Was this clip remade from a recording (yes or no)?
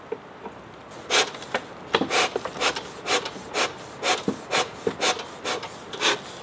no